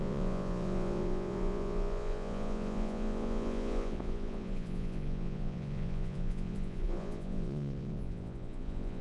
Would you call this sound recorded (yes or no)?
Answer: no